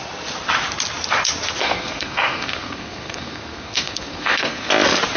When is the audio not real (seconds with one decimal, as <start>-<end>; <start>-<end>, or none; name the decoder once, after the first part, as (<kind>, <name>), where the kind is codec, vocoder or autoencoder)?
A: 1.6-4.7 (codec, SNAC)